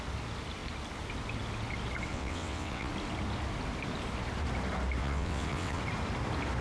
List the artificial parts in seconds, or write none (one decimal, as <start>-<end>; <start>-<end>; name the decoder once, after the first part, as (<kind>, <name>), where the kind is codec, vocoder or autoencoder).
2.1-2.9 (vocoder, WaveNeXt); 5.0-5.8